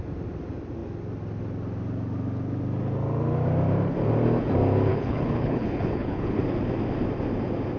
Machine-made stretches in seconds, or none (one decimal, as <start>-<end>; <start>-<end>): 4.9-6.4